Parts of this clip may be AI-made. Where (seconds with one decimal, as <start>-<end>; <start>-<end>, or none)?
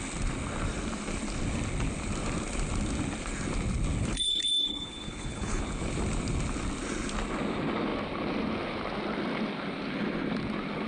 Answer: 4.1-5.6